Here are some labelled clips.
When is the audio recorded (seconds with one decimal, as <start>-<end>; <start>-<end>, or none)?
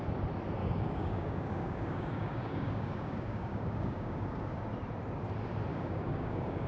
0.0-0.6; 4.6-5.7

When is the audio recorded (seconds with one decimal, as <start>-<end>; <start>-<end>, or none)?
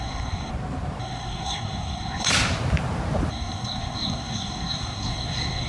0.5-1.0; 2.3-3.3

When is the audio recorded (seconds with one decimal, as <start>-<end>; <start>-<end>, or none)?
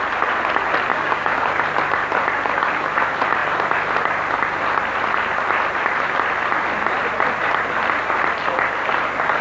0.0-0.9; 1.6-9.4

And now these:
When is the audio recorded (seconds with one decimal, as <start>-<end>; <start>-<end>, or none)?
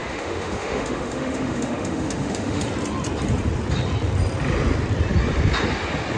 2.6-6.2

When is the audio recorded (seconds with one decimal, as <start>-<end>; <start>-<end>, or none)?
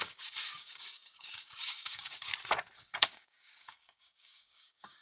2.3-2.8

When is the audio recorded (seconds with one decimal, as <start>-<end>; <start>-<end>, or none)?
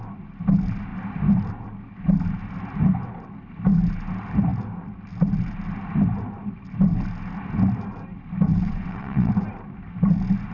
0.0-8.5; 9.3-10.5